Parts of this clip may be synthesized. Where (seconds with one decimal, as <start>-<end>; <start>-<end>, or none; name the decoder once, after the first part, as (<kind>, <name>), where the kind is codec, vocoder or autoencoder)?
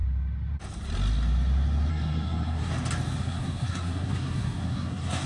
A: 1.9-2.7 (codec, SNAC); 3.2-5.3